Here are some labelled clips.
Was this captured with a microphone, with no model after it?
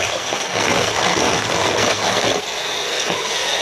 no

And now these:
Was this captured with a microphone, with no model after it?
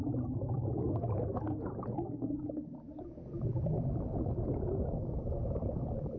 yes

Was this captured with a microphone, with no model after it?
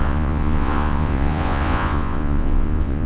no